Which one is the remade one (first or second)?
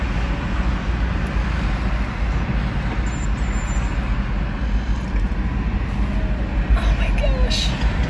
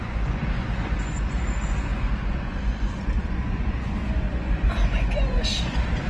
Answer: second